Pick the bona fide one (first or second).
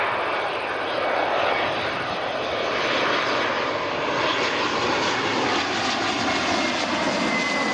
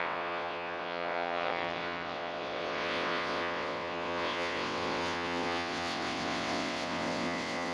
first